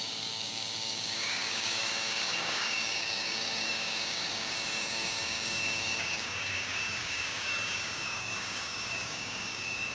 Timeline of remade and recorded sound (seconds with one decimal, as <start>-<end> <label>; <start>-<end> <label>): 0.0-9.9 remade